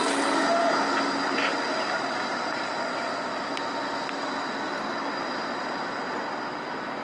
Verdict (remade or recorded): recorded